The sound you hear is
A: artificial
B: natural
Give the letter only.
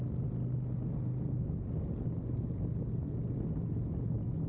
B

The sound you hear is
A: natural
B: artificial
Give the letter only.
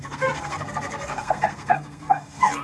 B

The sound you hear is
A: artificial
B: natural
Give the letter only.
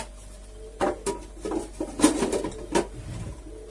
B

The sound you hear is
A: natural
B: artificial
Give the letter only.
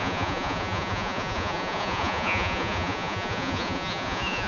B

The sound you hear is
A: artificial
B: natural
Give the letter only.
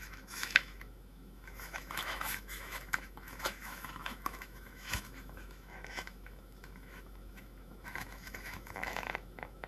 A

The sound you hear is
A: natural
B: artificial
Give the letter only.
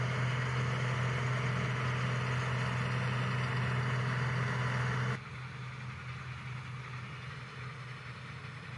A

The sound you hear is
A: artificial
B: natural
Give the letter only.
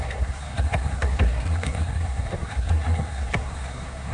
A